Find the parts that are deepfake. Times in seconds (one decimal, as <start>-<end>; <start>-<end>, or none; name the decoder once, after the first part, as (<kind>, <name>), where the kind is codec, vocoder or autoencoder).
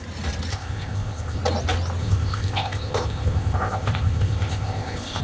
0.5-1.4 (codec, ZipCodec); 2.0-5.2